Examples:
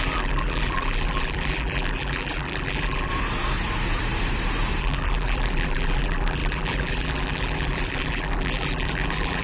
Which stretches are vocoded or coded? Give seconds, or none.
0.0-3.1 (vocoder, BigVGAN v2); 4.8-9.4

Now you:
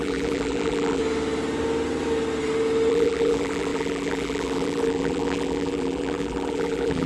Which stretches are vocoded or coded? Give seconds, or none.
0.0-1.0 (vocoder, BigVGAN v2); 2.9-7.1

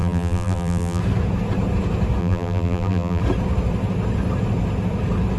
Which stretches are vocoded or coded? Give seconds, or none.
0.0-1.0 (vocoder, BigVGAN v2); 2.2-3.2